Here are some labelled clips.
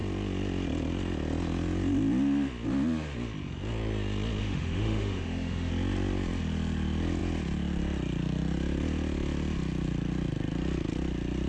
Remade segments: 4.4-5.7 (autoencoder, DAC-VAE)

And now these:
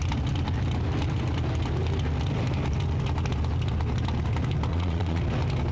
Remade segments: 4.7-5.2 (vocoder, Vocos)

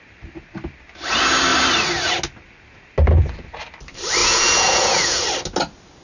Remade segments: 4.2-5.2 (vocoder, Vocos)